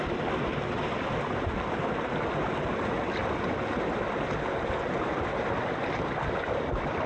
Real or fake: real